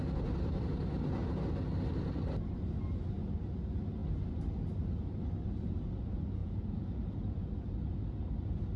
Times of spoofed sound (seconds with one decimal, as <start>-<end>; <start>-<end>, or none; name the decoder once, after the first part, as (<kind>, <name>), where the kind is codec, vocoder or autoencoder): 6.4-7.5 (vocoder, Vocos)